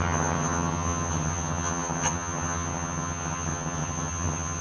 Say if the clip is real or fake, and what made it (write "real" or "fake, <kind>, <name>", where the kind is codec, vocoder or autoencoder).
fake, vocoder, HiFi-GAN